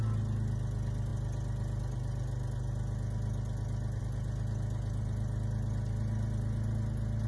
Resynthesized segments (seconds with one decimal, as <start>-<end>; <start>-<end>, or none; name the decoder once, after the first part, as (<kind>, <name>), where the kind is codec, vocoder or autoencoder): none